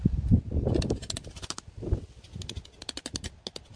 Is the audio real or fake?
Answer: real